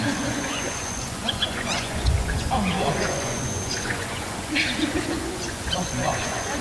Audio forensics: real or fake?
fake